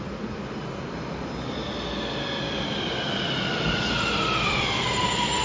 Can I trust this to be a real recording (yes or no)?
yes